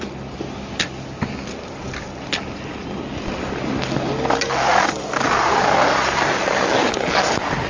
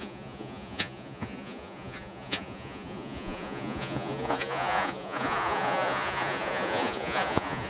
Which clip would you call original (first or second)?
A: first